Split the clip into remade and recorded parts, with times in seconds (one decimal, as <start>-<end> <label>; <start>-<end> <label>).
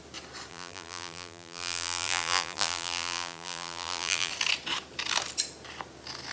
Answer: 0.0-0.5 recorded; 0.5-4.3 remade; 4.3-6.3 recorded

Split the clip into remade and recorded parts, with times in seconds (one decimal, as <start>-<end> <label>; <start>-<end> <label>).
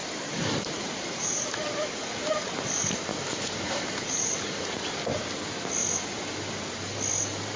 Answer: 0.0-2.6 remade; 2.6-3.1 recorded; 3.1-5.0 remade; 5.0-7.6 recorded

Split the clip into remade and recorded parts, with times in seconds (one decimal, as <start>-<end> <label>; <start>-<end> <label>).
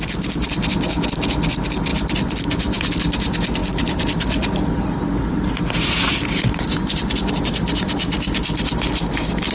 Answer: 0.0-1.9 recorded; 1.9-2.9 remade; 2.9-3.6 recorded; 3.6-7.4 remade; 7.4-9.5 recorded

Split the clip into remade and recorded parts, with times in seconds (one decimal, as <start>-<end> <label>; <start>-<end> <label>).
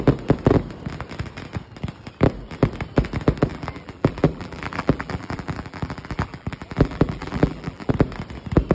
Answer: 0.0-3.5 recorded; 3.5-7.9 remade; 7.9-8.7 recorded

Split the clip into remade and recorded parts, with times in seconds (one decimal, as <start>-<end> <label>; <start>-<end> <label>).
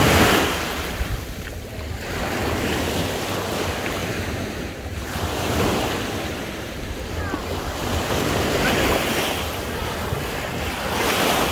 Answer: 0.0-4.0 recorded; 4.0-6.0 remade; 6.0-11.5 recorded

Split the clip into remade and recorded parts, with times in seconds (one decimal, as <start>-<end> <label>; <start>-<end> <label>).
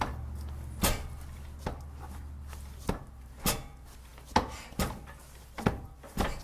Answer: 0.0-6.4 recorded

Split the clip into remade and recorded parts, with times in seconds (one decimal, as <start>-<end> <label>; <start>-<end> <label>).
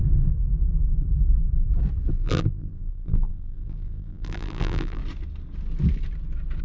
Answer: 0.0-2.1 recorded; 2.1-5.0 remade; 5.0-6.6 recorded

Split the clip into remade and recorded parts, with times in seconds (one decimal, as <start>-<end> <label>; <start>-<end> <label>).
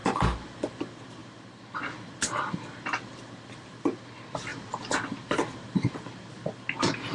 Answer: 0.0-0.7 remade; 0.7-4.5 recorded; 4.5-6.3 remade; 6.3-7.1 recorded